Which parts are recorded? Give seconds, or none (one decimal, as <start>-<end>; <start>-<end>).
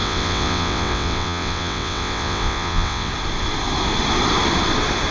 3.1-5.1